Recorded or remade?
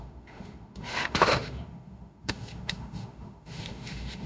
remade